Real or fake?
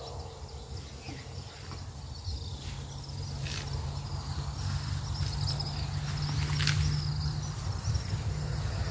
real